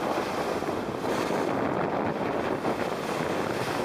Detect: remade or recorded recorded